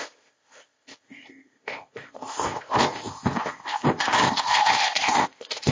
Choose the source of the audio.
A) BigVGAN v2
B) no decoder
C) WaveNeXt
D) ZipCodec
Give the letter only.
D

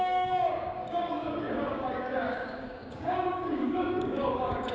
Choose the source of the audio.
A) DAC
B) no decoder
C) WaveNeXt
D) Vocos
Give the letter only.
A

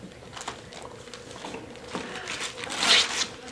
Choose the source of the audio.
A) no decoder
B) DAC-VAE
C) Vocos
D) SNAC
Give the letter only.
A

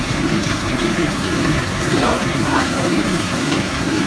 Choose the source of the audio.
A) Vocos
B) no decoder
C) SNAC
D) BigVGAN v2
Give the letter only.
C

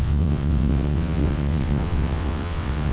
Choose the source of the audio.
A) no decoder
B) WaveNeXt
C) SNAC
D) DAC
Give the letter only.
B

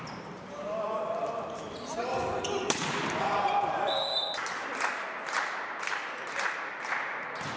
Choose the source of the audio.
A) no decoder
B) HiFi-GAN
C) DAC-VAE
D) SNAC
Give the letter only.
A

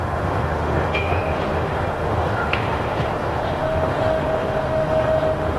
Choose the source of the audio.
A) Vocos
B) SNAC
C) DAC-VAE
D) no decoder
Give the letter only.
C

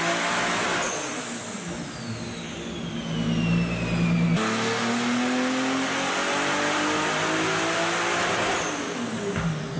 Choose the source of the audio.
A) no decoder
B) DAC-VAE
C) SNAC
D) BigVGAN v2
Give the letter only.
A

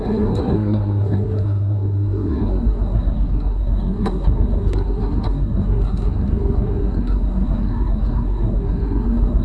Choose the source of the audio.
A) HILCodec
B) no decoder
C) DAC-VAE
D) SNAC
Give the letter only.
D